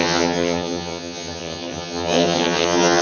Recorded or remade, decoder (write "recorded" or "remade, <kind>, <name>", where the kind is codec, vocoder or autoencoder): remade, vocoder, HiFi-GAN